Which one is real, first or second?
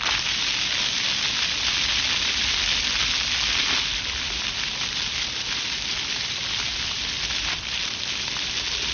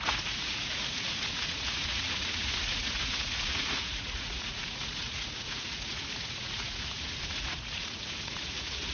first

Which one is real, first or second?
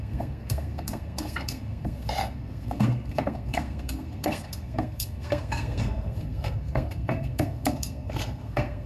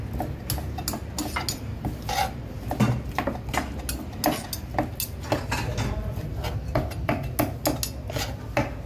second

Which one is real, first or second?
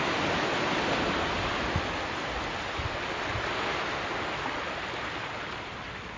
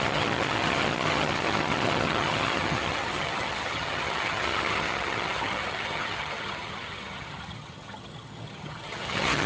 first